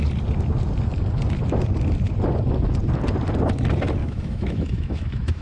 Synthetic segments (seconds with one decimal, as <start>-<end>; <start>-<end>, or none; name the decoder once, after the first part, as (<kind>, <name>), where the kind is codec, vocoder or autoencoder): 4.0-5.4 (autoencoder, DAC-VAE)